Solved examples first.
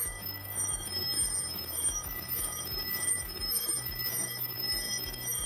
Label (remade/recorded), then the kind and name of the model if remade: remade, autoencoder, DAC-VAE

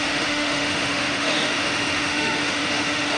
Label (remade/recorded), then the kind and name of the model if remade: remade, autoencoder, DAC-VAE